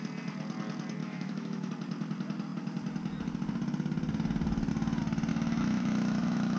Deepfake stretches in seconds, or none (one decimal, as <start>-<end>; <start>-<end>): 1.0-1.7; 5.3-6.6